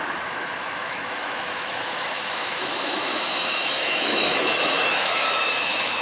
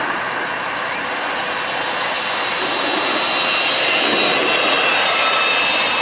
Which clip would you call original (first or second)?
second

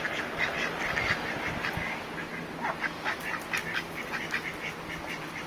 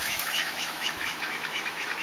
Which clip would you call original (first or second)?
first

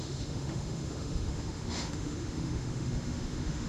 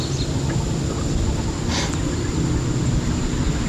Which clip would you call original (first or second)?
second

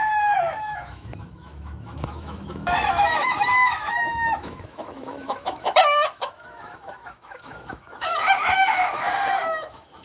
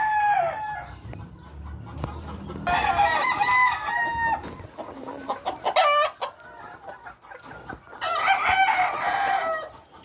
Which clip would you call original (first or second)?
second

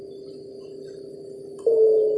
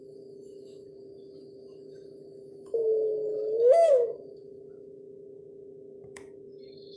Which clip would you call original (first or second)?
first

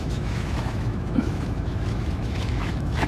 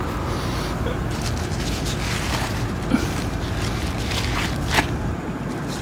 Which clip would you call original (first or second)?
second